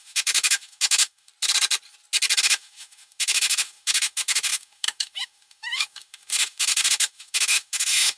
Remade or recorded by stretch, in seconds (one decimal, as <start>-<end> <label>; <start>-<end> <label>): 0.0-1.3 remade; 1.3-2.4 recorded; 2.4-8.2 remade

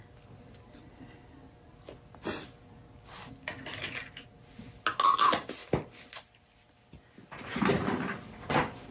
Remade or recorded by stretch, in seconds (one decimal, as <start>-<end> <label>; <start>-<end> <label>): 0.0-8.9 recorded